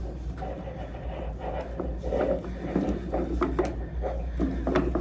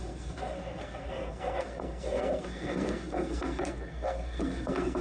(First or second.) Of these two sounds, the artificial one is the second